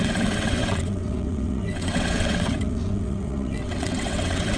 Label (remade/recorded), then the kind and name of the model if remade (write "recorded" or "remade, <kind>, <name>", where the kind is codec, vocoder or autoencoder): remade, vocoder, WaveNeXt